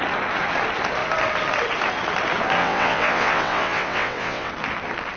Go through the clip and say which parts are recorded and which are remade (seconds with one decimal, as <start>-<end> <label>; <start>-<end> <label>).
0.0-2.6 recorded; 2.6-4.5 remade; 4.5-5.2 recorded